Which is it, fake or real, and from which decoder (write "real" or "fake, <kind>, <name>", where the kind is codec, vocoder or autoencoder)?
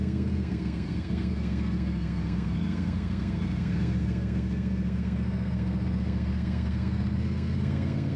fake, codec, SNAC